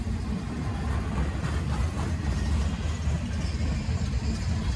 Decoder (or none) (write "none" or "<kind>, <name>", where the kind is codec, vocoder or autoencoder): none